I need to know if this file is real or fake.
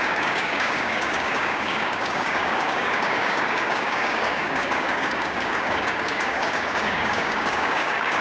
fake